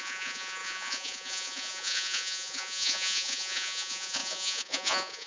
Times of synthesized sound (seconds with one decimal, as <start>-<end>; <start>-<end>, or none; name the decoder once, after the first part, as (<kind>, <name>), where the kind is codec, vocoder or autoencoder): 0.0-5.3 (vocoder, Vocos)